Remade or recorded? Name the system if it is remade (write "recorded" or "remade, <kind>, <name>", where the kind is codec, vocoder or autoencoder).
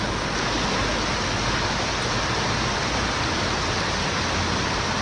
recorded